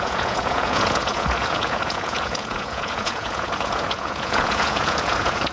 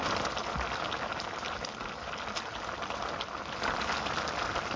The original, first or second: second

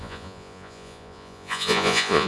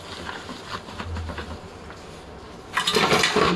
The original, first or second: second